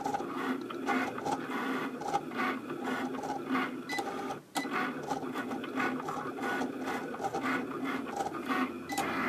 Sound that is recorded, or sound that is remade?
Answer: recorded